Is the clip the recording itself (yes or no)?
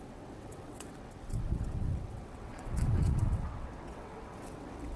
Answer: no